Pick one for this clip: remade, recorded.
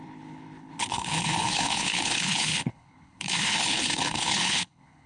remade